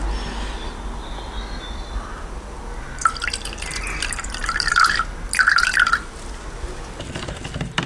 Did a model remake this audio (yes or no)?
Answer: no